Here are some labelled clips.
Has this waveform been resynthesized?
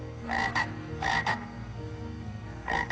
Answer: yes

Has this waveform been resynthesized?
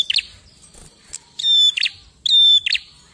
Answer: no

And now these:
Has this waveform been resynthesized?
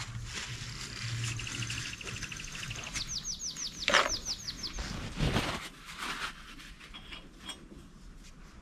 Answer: no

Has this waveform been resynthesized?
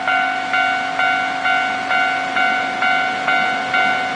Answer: no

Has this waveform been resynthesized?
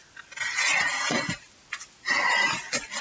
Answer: no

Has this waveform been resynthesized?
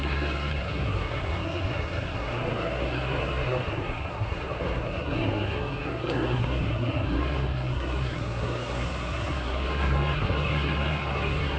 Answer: yes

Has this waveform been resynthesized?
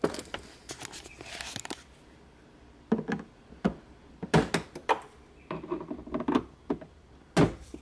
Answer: no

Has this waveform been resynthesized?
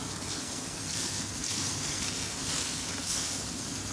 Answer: yes